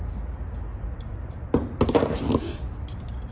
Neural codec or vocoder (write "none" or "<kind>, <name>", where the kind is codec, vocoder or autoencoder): none